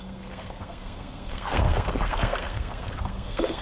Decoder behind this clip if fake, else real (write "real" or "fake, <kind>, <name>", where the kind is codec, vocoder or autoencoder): fake, codec, SNAC